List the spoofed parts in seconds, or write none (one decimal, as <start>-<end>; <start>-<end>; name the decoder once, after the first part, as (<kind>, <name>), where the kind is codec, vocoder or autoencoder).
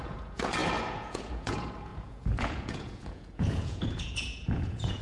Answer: 0.0-5.0 (vocoder, Vocos)